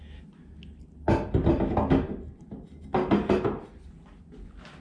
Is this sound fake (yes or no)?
no